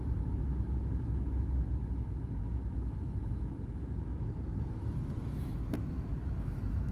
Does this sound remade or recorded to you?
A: remade